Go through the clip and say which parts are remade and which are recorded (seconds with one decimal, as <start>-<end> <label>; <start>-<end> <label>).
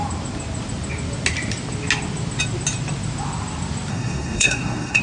0.0-3.9 recorded; 3.9-5.0 remade